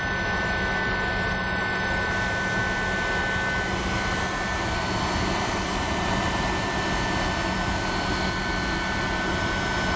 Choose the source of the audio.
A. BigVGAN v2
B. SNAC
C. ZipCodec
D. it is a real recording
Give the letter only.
D